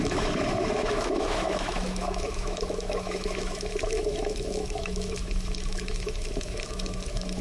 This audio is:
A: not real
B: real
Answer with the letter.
A